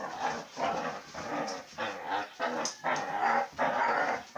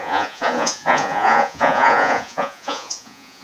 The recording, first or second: first